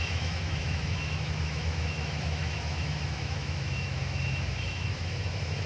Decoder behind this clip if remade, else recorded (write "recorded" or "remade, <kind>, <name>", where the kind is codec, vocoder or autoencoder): remade, autoencoder, DAC-VAE